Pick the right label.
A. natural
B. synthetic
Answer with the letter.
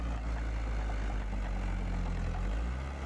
A